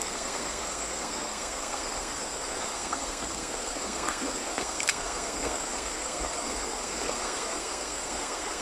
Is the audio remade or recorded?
remade